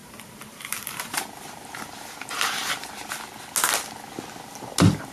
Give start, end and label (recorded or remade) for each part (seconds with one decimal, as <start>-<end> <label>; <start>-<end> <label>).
0.0-3.1 remade; 3.1-5.1 recorded